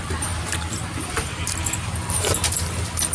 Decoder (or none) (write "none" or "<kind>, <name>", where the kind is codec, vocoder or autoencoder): none